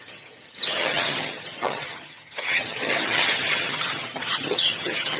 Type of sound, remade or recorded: remade